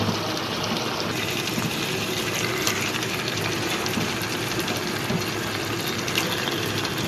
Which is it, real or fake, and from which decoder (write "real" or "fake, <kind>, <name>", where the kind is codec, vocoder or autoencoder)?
real